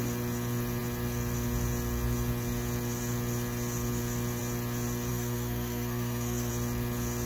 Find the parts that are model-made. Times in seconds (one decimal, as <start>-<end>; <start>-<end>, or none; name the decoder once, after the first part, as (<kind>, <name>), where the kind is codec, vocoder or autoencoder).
5.1-6.5 (codec, SNAC)